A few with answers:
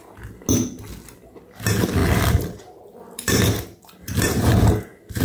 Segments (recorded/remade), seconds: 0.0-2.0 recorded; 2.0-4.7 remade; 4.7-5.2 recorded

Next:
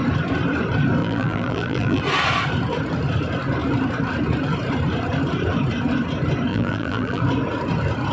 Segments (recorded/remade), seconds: 0.0-1.0 recorded; 1.0-2.0 remade; 2.0-6.5 recorded; 6.5-7.2 remade; 7.2-8.1 recorded

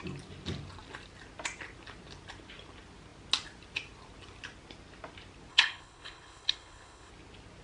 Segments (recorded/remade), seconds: 0.0-5.5 recorded; 5.5-7.1 remade; 7.1-7.6 recorded

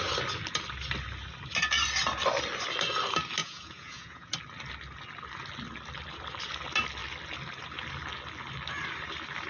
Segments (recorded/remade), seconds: 0.0-3.4 recorded; 3.4-4.3 remade; 4.3-9.5 recorded

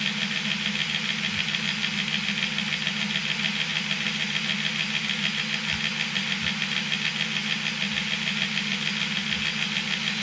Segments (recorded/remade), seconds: 0.0-10.2 recorded